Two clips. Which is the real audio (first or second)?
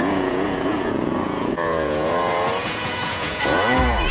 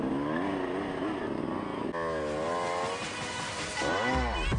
second